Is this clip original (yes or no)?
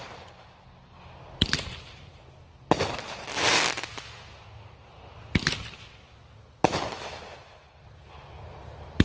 yes